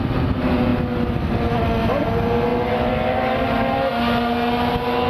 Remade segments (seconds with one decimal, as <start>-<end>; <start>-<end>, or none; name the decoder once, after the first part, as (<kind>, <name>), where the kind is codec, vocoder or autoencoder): none